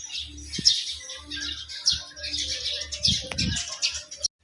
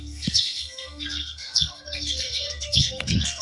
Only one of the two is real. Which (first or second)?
first